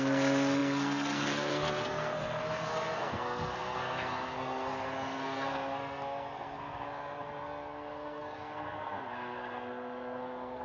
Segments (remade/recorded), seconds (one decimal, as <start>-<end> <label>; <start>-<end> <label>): 0.0-10.6 remade